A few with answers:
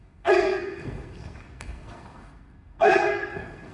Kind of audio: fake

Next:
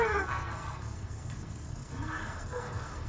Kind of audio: fake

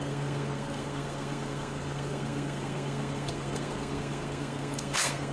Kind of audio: fake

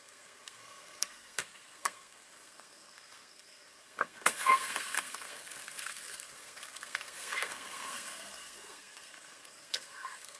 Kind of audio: fake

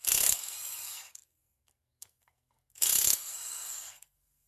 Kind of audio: fake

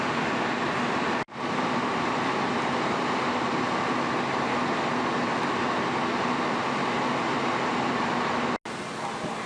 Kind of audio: real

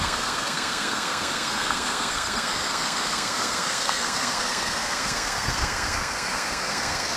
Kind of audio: fake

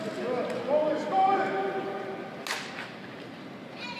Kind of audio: real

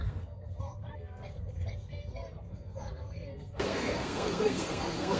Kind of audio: fake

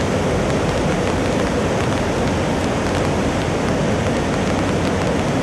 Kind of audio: real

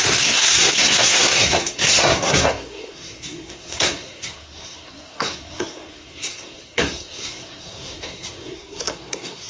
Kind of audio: fake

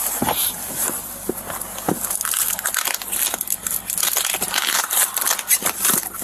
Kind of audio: real